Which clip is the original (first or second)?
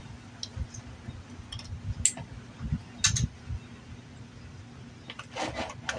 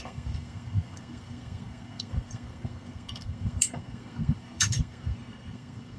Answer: first